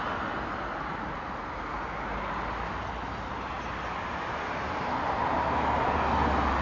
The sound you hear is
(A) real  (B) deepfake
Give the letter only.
A